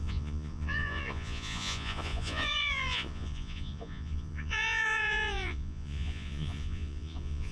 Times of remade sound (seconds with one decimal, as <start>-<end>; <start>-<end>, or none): 0.0-7.5